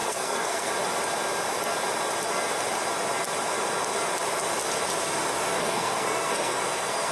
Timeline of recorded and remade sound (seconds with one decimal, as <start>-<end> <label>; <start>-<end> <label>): 0.0-0.7 remade; 0.7-5.6 recorded; 5.6-7.1 remade